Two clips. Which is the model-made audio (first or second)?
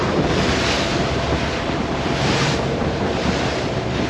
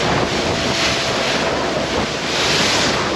first